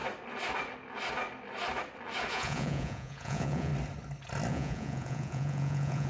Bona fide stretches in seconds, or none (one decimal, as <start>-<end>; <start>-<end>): 0.0-2.3; 3.7-4.5